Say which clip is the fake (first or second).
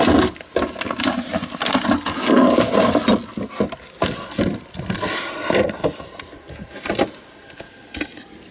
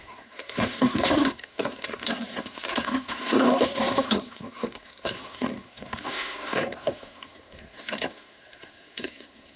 second